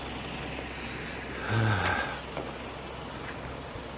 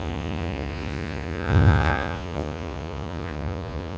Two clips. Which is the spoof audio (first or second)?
second